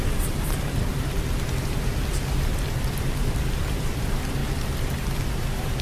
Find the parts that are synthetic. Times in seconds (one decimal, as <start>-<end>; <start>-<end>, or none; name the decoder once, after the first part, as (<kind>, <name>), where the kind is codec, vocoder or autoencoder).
0.0-0.9 (vocoder, BigVGAN v2); 2.9-4.4; 5.3-5.8